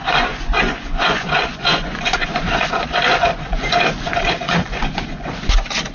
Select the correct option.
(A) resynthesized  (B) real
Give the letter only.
A